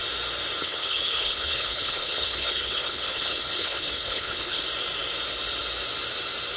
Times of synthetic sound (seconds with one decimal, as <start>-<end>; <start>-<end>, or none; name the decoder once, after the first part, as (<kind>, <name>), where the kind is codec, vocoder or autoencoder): 0.6-4.6 (codec, HILCodec)